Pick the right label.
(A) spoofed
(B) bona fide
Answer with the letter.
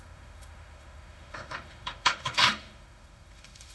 A